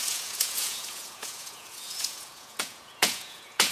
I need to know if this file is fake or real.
fake